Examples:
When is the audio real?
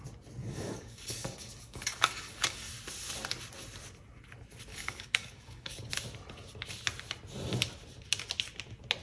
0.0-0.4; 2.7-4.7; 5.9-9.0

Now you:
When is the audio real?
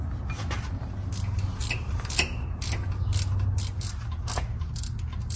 0.0-5.4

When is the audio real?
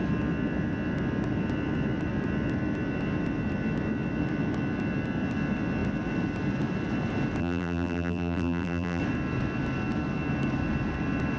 0.0-7.4; 9.0-11.4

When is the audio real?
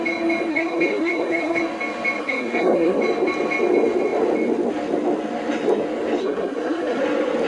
0.0-0.5; 1.6-2.2; 3.0-6.2; 7.0-7.5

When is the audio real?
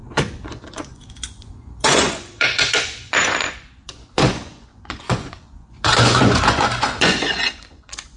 none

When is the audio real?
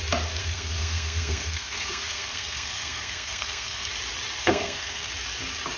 0.0-0.4; 3.9-4.4; 5.1-5.8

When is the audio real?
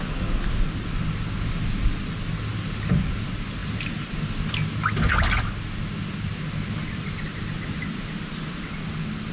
0.0-9.3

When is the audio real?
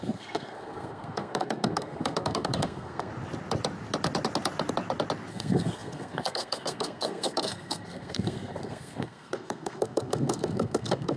3.1-5.3